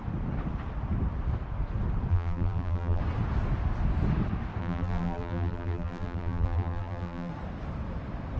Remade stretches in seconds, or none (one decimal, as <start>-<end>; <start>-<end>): 2.1-3.0; 4.6-7.3